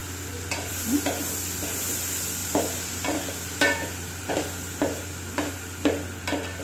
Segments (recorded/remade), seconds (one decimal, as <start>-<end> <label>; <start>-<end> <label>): 0.0-2.4 recorded; 2.4-4.3 remade; 4.3-6.6 recorded